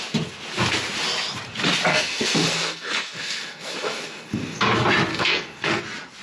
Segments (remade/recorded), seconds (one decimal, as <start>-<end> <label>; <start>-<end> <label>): 0.0-1.9 recorded; 1.9-4.6 remade; 4.6-5.1 recorded; 5.1-5.8 remade; 5.8-6.2 recorded